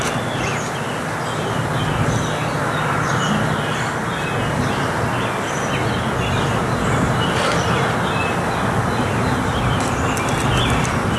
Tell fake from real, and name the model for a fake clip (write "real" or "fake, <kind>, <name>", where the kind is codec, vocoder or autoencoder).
real